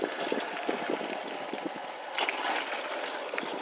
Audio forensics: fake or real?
real